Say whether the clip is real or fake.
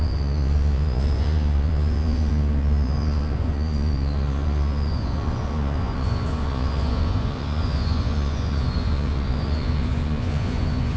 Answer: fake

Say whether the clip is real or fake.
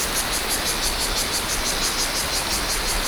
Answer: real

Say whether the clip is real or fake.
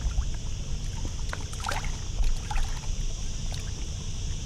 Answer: real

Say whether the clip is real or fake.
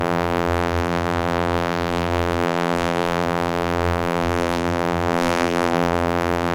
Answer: fake